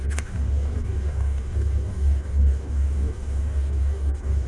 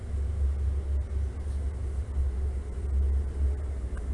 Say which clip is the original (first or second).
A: second